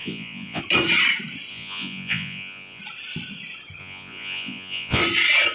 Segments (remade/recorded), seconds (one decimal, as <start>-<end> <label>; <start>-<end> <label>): 0.0-0.6 remade; 0.6-1.5 recorded; 1.5-2.8 remade; 2.8-3.8 recorded; 3.8-5.0 remade; 5.0-5.5 recorded